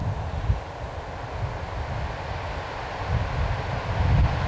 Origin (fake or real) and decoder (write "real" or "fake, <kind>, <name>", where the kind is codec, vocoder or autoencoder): real